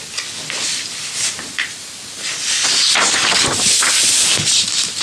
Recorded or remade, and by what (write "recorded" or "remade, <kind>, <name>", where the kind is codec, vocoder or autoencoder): recorded